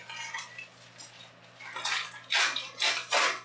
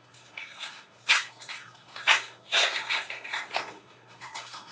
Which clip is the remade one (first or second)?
second